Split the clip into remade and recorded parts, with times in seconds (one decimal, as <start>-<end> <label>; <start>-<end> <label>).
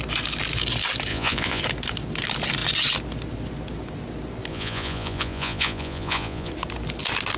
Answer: 0.0-1.1 recorded; 1.1-1.6 remade; 1.6-4.5 recorded; 4.5-6.5 remade; 6.5-7.4 recorded